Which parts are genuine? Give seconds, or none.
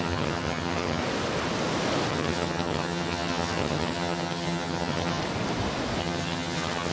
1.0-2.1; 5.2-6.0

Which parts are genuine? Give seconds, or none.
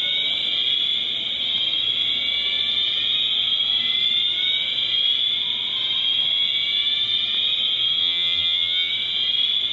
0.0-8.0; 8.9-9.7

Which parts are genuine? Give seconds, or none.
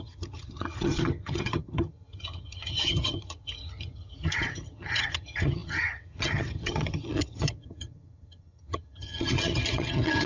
none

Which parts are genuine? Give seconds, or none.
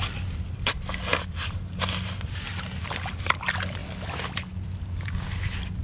0.0-5.8